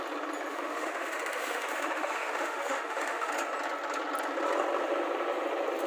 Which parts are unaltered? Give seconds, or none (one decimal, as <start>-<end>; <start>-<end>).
0.0-0.5; 3.3-5.9